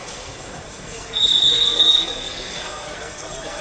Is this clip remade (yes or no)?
yes